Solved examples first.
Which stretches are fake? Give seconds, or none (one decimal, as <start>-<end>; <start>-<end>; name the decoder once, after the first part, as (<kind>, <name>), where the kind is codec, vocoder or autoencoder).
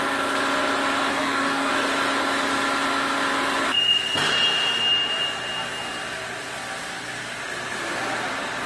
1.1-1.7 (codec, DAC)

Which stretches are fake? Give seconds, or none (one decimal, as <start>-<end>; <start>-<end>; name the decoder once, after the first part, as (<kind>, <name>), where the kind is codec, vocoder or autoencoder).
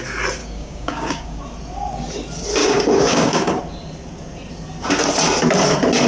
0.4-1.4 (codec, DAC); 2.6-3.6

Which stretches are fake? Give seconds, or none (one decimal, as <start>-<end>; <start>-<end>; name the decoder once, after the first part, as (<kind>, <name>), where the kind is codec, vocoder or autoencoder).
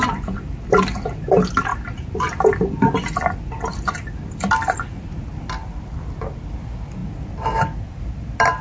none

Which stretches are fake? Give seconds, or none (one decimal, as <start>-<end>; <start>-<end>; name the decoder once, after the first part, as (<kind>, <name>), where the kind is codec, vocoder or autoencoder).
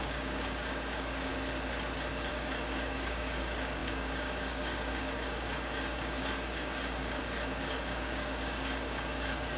0.0-1.3 (codec, DAC); 2.3-9.6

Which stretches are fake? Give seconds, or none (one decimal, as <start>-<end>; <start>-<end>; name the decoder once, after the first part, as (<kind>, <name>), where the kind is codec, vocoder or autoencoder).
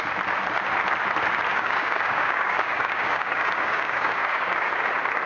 1.5-4.7 (codec, DAC)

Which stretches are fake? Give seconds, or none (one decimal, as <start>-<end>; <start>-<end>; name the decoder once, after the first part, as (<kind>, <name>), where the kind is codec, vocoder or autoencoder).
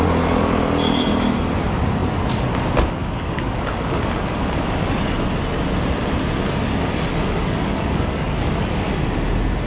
3.0-4.9 (codec, DAC); 7.1-8.9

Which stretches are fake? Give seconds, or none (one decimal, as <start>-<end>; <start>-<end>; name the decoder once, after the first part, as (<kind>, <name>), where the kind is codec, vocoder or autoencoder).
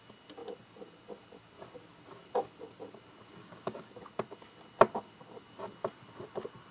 3.4-3.9 (codec, DAC)